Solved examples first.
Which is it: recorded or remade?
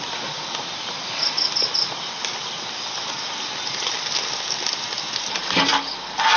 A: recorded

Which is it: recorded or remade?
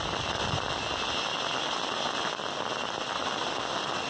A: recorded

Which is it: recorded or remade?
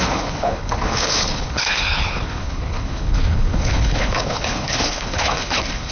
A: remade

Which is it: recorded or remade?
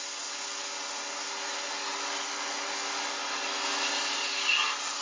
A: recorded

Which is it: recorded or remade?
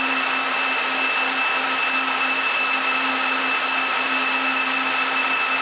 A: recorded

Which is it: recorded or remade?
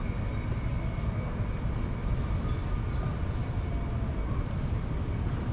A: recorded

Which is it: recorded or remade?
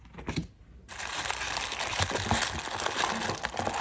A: recorded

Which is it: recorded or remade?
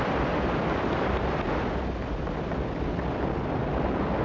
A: recorded